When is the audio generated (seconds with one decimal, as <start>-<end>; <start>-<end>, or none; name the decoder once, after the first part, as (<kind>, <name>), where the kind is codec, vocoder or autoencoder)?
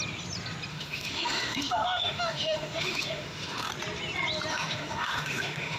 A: 0.7-3.7 (autoencoder, DAC-VAE); 4.5-5.8